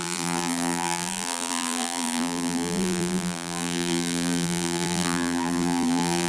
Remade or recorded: remade